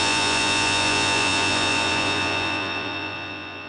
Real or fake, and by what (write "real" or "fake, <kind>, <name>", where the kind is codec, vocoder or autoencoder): fake, vocoder, Vocos